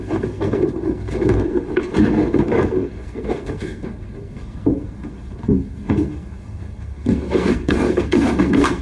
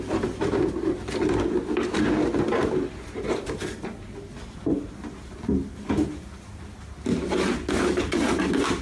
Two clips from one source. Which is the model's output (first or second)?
first